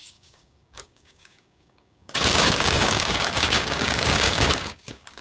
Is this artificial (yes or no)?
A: yes